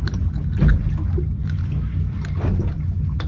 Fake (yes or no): no